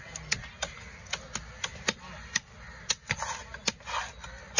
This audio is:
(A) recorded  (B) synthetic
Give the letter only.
A